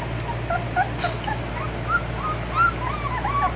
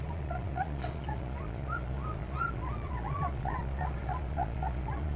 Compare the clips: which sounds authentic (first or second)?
first